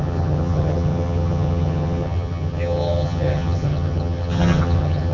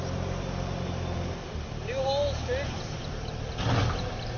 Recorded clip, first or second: second